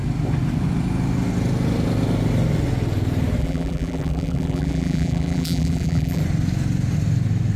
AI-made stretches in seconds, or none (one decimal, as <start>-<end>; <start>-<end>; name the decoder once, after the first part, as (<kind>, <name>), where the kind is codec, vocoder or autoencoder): 3.4-6.2 (vocoder, BigVGAN v2)